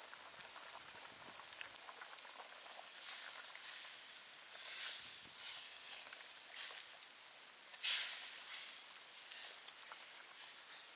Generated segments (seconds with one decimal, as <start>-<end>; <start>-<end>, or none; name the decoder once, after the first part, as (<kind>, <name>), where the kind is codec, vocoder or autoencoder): 5.6-6.1 (codec, SNAC)